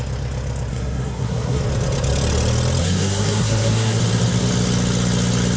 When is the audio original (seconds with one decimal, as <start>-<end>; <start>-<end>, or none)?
0.0-0.7; 1.6-2.8; 4.0-5.6